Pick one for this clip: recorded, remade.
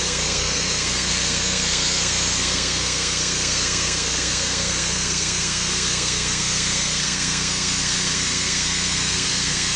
remade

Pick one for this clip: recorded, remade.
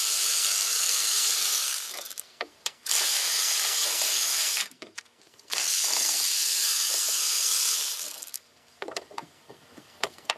remade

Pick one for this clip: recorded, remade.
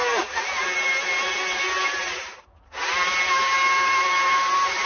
recorded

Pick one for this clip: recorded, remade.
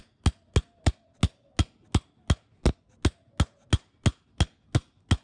recorded